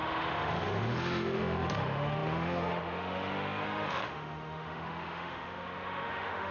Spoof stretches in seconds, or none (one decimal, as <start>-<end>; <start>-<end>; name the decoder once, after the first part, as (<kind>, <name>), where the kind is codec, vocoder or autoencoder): 0.0-6.5 (autoencoder, DAC-VAE)